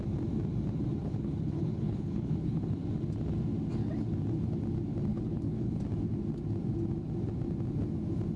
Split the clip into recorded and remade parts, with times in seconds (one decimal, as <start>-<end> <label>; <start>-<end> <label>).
0.0-1.0 recorded; 1.0-2.7 remade; 2.7-5.1 recorded; 5.1-5.8 remade; 5.8-8.4 recorded

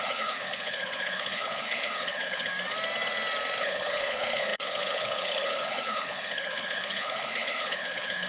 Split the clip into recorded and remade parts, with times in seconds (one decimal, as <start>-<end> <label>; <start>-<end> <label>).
0.0-2.5 remade; 2.5-3.6 recorded; 3.6-8.3 remade

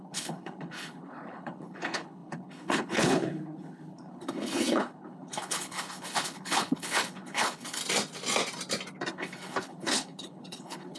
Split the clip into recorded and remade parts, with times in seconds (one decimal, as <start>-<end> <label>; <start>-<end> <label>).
0.0-7.8 remade; 7.8-9.1 recorded; 9.1-11.0 remade

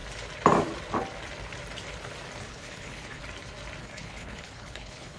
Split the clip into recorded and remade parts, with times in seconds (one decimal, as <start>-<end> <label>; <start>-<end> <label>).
0.0-2.4 recorded; 2.4-3.2 remade; 3.2-3.8 recorded; 3.8-5.2 remade

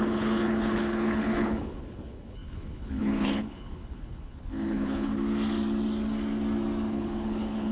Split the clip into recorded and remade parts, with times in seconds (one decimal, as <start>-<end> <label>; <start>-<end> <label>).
0.0-5.1 remade; 5.1-6.9 recorded; 6.9-7.7 remade

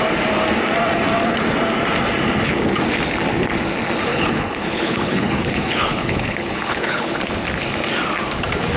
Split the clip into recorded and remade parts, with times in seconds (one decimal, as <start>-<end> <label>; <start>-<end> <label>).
0.0-4.1 recorded; 4.1-7.3 remade; 7.3-8.8 recorded